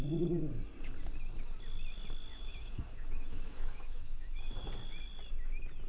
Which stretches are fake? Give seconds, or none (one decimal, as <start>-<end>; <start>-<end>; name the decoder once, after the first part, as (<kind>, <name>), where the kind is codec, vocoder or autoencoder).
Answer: 2.3-4.7 (autoencoder, DAC-VAE)